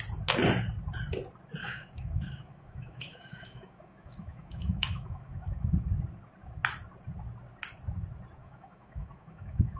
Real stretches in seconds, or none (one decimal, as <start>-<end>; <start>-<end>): 0.0-1.6; 5.7-8.4